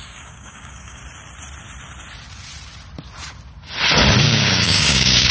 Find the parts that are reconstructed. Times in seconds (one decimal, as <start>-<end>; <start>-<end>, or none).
0.0-1.0; 4.2-5.3